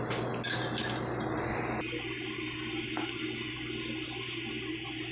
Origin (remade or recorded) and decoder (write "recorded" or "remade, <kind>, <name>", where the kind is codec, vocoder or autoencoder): recorded